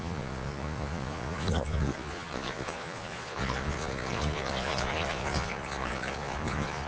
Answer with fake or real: fake